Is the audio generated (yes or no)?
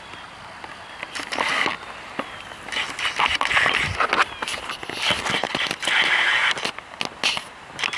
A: no